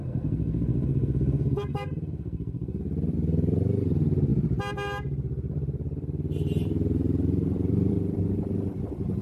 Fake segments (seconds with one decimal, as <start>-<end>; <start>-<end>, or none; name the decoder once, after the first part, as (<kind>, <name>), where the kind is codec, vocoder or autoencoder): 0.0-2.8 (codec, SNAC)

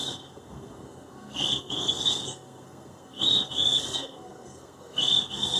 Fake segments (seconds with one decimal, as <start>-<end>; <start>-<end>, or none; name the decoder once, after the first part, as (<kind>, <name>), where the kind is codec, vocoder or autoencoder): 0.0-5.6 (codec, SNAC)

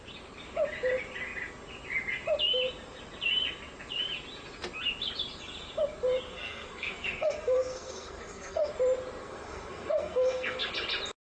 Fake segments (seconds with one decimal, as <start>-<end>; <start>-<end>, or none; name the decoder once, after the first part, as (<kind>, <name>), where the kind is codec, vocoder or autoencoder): 6.3-8.7 (codec, SNAC); 9.2-10.7

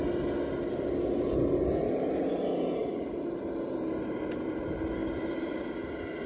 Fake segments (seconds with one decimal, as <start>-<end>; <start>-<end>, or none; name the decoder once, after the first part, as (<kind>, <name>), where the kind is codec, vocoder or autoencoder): none

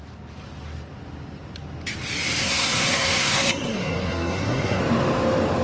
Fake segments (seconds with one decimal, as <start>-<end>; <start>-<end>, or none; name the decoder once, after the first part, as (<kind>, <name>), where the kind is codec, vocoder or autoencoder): 2.4-4.8 (codec, SNAC)